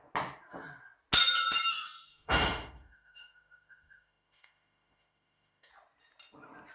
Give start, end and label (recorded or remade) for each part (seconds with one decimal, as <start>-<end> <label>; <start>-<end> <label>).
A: 0.0-1.7 recorded; 1.7-5.7 remade; 5.7-6.7 recorded